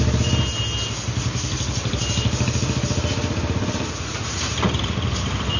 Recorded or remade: recorded